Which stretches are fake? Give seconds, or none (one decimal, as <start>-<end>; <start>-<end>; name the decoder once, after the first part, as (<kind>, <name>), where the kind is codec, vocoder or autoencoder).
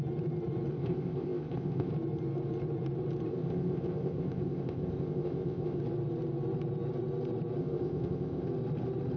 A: 0.7-1.9 (codec, ZipCodec); 3.3-5.8; 7.6-8.5